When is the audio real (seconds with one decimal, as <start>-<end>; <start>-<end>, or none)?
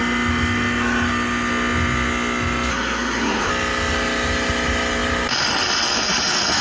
0.0-2.7; 3.5-6.6